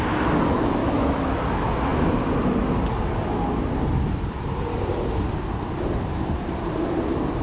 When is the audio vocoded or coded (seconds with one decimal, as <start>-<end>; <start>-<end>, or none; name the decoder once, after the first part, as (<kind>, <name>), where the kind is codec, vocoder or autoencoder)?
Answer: 0.8-1.3 (autoencoder, DAC-VAE)